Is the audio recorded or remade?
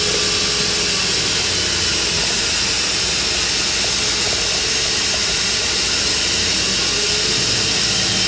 recorded